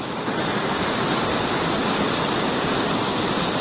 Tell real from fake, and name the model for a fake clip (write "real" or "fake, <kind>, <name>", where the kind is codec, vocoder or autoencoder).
real